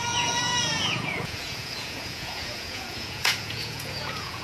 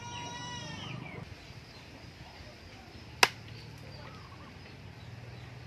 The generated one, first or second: first